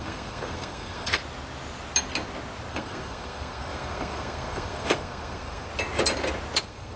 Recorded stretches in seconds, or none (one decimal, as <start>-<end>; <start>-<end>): 1.2-2.7; 5.7-6.6